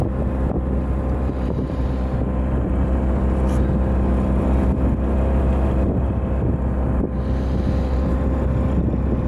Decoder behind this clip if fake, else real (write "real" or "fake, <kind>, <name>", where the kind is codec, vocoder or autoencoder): real